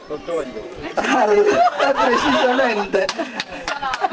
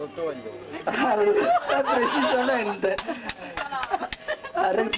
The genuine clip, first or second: second